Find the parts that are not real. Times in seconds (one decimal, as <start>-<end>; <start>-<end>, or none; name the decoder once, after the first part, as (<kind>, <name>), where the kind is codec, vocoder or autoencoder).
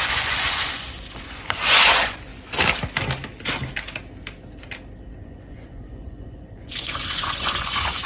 0.0-2.3 (vocoder, Vocos); 5.2-8.1